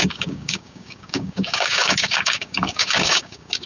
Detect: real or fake fake